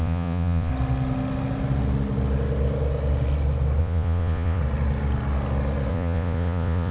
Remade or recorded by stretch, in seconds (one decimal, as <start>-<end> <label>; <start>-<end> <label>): 0.0-0.7 remade; 0.7-3.8 recorded; 3.8-4.6 remade; 4.6-5.9 recorded; 5.9-6.9 remade